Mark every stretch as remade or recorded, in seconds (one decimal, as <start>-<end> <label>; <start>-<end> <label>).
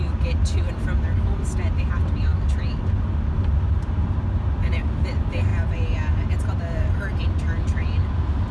0.0-8.5 recorded